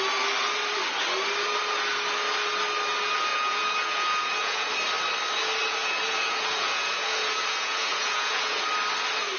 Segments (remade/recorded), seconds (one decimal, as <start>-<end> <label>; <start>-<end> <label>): 0.0-3.3 recorded; 3.3-4.7 remade; 4.7-5.8 recorded; 5.8-8.6 remade; 8.6-9.4 recorded